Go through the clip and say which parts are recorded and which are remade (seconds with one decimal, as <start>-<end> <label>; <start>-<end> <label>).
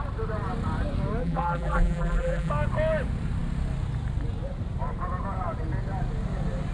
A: 0.0-1.2 recorded; 1.2-2.5 remade; 2.5-6.7 recorded